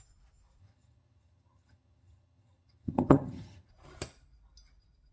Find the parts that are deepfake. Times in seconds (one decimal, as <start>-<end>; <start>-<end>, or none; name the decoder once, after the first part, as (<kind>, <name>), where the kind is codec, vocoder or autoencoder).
0.6-3.7 (vocoder, HiFi-GAN)